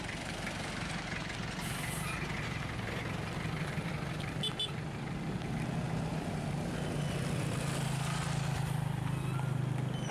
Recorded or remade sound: recorded